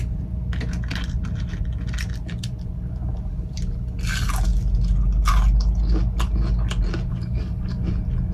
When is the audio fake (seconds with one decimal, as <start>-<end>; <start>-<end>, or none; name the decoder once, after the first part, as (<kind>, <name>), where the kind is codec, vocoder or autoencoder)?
7.1-7.9 (codec, DAC)

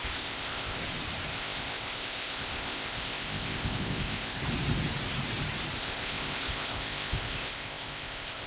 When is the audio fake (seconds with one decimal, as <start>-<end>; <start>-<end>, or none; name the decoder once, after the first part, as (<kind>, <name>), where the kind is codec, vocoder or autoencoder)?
0.0-0.8 (codec, ZipCodec); 1.3-4.4; 5.8-8.5